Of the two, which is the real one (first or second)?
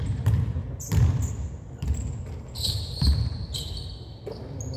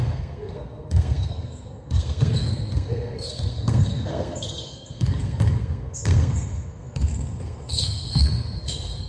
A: first